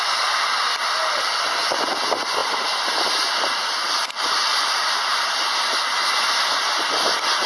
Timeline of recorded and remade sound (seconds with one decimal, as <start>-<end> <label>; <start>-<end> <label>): 0.0-4.5 recorded; 4.5-5.1 remade; 5.1-7.5 recorded

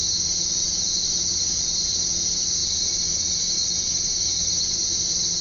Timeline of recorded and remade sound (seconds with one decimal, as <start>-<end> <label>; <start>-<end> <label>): 0.0-2.6 recorded; 2.6-3.3 remade; 3.3-5.4 recorded

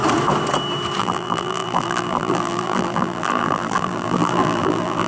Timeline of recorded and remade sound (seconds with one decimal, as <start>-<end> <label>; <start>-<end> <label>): 0.0-1.0 recorded; 1.0-5.1 remade

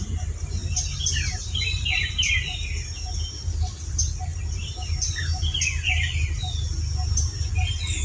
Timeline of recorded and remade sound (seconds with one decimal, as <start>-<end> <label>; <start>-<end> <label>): 0.0-0.6 recorded; 0.6-2.1 remade; 2.1-4.3 recorded; 4.3-6.1 remade; 6.1-8.0 recorded